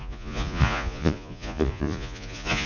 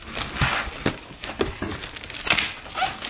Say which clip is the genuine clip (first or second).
second